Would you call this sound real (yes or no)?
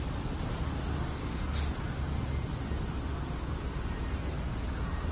yes